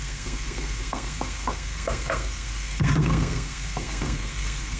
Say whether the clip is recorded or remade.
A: remade